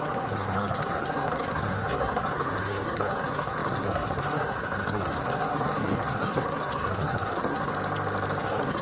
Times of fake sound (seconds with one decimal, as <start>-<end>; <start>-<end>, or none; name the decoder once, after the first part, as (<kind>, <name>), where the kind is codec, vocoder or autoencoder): 0.0-7.7 (codec, SNAC); 8.4-8.8